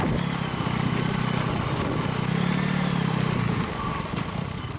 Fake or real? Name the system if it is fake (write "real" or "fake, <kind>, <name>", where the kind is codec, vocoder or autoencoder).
real